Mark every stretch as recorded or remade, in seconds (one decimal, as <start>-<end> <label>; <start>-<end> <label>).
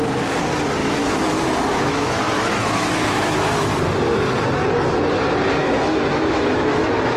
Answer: 0.0-0.8 recorded; 0.8-3.8 remade; 3.8-5.6 recorded; 5.6-6.8 remade; 6.8-7.2 recorded